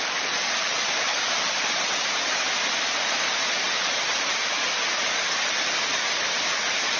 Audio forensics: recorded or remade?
recorded